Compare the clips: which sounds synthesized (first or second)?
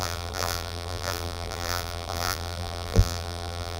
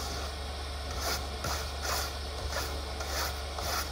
first